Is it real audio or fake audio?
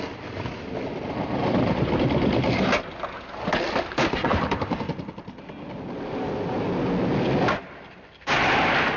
real